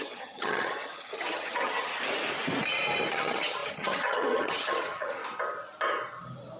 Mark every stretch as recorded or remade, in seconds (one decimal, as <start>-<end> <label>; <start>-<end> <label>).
0.0-1.9 remade; 1.9-3.1 recorded; 3.1-5.2 remade; 5.2-6.6 recorded